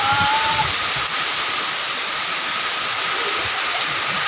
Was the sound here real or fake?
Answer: fake